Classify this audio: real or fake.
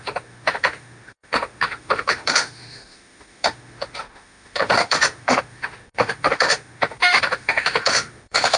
fake